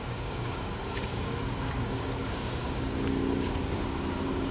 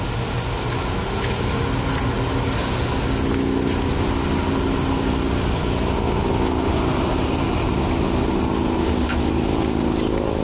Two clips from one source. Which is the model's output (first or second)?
first